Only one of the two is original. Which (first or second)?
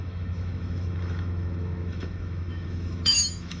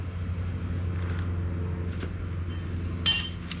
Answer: second